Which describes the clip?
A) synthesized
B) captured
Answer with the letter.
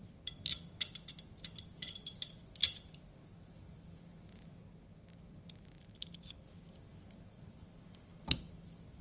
B